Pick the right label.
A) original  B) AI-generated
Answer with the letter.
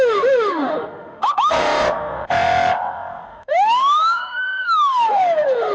B